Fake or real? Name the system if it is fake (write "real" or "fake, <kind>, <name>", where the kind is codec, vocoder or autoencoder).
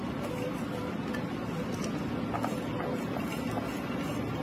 real